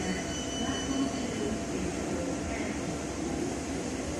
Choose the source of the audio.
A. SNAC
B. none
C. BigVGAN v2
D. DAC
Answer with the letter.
C